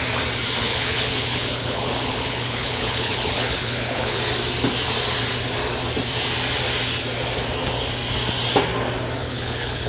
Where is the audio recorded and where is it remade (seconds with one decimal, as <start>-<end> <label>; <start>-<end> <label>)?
0.0-0.6 recorded; 0.6-4.2 remade; 4.2-9.2 recorded; 9.2-9.9 remade